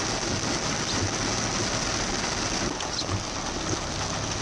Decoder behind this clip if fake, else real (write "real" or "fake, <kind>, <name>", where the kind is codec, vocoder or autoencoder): real